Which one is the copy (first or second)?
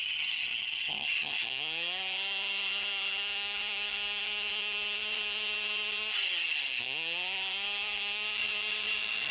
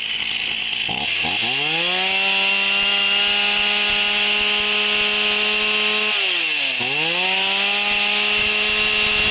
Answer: first